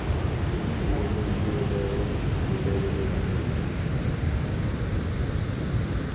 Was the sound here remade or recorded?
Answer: recorded